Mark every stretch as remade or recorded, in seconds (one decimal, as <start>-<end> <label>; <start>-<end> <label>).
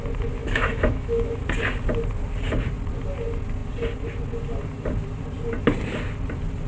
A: 0.0-0.4 recorded; 0.4-1.4 remade; 1.4-6.7 recorded